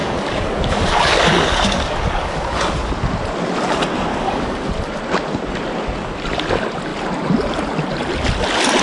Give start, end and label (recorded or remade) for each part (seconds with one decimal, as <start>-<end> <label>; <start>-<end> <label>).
0.0-2.9 remade; 2.9-4.1 recorded; 4.1-4.7 remade; 4.7-8.8 recorded